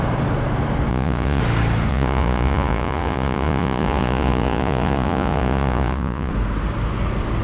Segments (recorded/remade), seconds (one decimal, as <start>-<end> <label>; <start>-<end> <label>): 0.0-0.9 recorded; 0.9-1.4 remade; 1.4-1.9 recorded; 1.9-6.3 remade; 6.3-7.4 recorded